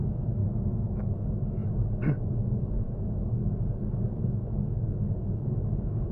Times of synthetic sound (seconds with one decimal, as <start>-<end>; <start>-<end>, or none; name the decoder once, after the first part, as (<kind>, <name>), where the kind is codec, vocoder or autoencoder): 0.0-0.4 (codec, DAC); 1.1-6.1